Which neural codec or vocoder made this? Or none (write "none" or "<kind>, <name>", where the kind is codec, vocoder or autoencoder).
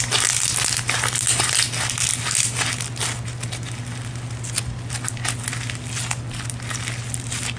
none